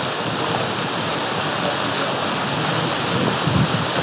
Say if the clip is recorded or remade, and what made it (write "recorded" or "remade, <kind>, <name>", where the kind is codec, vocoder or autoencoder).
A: recorded